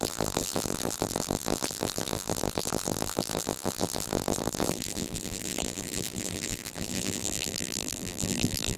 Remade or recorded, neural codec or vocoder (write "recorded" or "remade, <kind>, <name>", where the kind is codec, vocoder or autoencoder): remade, vocoder, BigVGAN v2